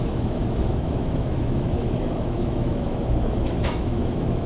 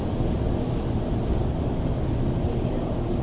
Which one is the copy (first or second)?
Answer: first